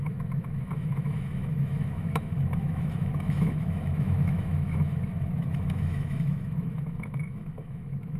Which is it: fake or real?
fake